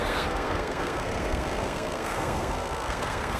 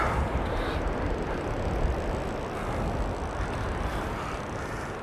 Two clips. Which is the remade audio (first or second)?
first